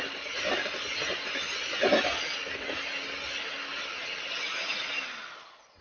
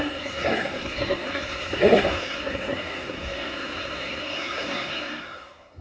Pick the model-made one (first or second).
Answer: second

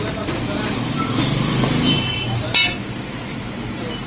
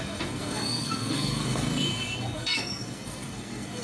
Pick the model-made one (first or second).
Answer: second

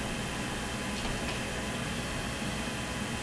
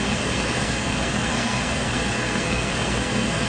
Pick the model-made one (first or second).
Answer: second